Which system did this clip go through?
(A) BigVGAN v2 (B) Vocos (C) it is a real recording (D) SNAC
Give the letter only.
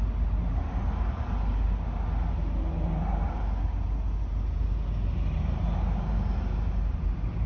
C